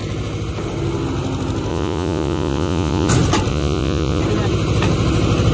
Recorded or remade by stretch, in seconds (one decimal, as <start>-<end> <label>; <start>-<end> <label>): 0.0-1.7 recorded; 1.7-3.1 remade; 3.1-3.5 recorded; 3.5-4.2 remade; 4.2-5.5 recorded